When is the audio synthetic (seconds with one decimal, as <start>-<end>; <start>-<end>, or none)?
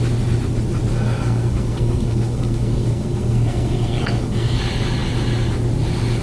0.9-4.6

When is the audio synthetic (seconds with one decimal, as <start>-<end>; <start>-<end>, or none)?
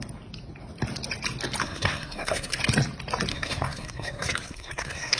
1.6-2.6; 3.3-5.2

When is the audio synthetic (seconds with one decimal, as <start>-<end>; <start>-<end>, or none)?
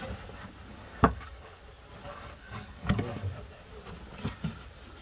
0.7-1.6; 2.0-3.3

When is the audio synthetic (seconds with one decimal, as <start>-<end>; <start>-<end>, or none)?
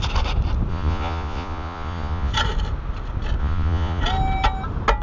0.7-2.3; 3.4-4.0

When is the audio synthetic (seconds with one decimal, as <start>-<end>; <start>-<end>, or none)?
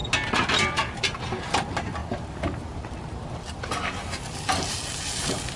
2.0-4.2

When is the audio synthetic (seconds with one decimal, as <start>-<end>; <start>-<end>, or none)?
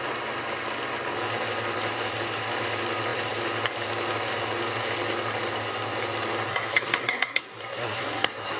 6.5-8.6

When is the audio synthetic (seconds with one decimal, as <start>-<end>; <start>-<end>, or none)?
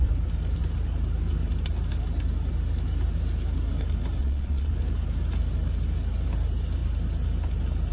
4.2-4.7